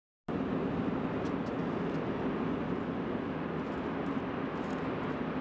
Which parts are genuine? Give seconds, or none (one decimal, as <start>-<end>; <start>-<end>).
0.0-5.4